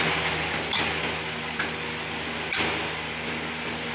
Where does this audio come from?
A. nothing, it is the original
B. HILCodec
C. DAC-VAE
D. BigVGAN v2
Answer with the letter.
A